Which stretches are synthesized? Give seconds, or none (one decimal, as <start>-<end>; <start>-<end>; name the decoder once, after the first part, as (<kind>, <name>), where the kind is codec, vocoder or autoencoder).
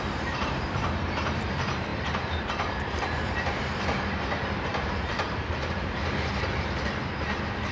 0.0-7.7 (vocoder, BigVGAN v2)